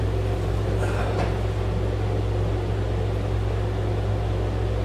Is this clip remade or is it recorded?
recorded